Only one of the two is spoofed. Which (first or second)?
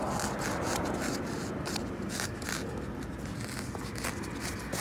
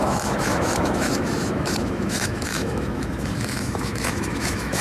second